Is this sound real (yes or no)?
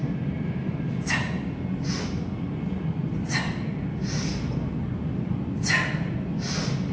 yes